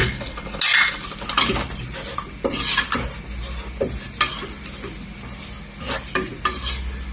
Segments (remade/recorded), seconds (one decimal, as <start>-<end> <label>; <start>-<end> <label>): 0.0-0.6 remade; 0.6-7.1 recorded